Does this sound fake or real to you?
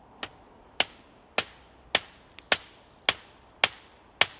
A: real